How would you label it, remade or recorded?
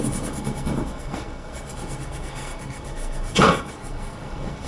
remade